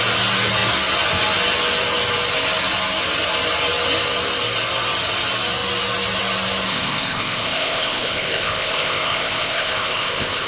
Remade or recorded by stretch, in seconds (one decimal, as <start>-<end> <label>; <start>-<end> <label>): 0.0-6.7 recorded; 6.7-10.5 remade